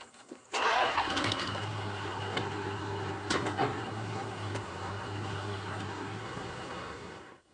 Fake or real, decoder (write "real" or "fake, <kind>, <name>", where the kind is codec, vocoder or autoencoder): fake, codec, SNAC